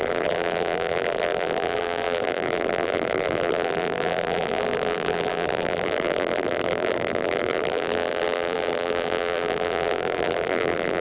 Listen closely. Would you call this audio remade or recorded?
remade